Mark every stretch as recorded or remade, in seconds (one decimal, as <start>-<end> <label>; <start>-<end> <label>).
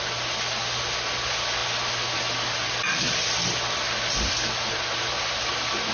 0.0-5.9 recorded